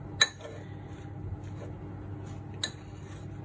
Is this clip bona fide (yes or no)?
yes